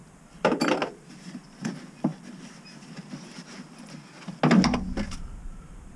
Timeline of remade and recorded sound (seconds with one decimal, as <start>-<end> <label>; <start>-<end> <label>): 0.0-2.1 remade; 2.1-6.0 recorded